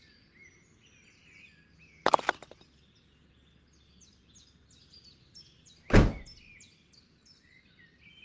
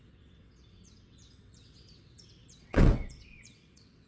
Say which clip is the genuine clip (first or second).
first